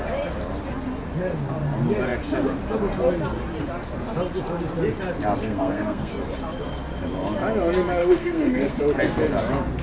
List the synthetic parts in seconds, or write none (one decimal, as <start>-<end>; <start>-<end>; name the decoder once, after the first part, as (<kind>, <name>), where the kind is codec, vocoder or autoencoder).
5.4-6.1 (codec, SNAC); 8.0-8.8